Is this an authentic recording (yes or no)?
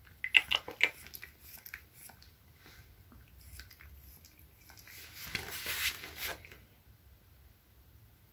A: yes